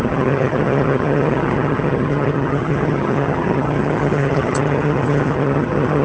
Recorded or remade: remade